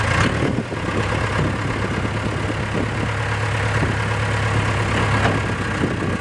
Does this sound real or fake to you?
real